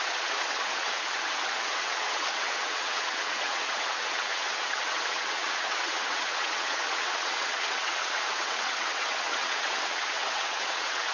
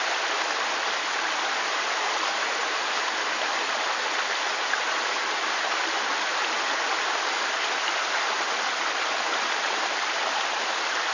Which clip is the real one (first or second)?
second